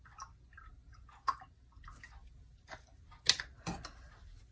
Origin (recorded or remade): recorded